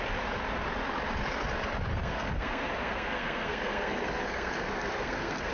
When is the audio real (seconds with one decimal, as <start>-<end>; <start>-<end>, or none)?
0.0-1.9